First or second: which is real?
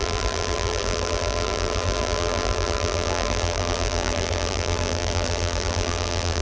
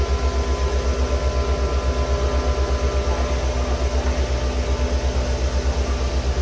second